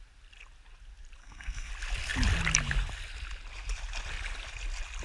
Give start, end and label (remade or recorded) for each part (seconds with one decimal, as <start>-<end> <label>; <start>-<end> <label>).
0.0-1.2 recorded; 1.2-1.7 remade; 1.7-5.0 recorded